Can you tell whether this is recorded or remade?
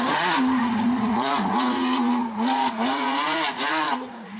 remade